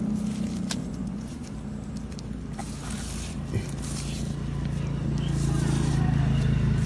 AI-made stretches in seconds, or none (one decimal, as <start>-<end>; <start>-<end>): 0.8-1.5